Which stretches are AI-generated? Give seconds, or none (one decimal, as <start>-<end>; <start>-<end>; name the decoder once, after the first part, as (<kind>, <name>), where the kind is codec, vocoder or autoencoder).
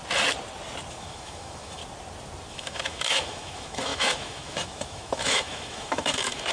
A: 0.9-1.8 (autoencoder, DAC-VAE); 2.5-6.5